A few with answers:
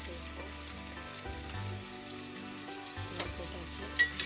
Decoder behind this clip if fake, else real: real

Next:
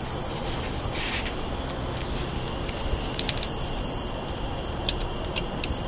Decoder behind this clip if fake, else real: real